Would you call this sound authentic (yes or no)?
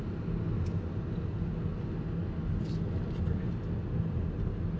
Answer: yes